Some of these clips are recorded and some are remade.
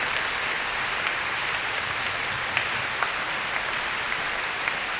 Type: recorded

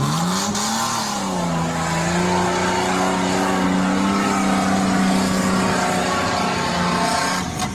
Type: recorded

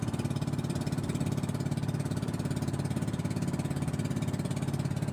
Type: recorded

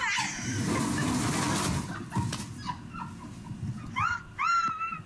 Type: recorded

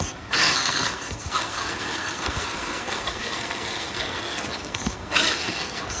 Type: remade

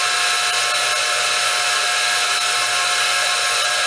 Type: recorded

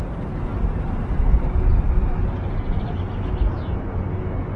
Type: recorded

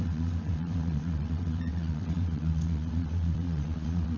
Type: remade